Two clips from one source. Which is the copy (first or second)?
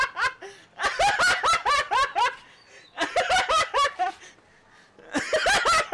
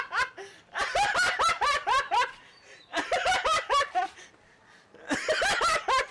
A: second